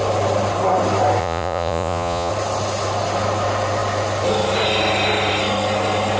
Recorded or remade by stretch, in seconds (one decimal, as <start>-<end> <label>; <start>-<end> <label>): 0.0-1.2 recorded; 1.2-2.3 remade; 2.3-6.2 recorded